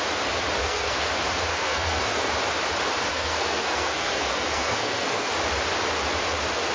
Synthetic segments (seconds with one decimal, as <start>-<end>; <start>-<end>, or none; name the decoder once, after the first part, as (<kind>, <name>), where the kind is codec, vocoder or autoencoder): 0.6-1.1 (codec, SNAC); 1.5-2.3; 3.1-5.3